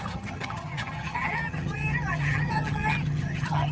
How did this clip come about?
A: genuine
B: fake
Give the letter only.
B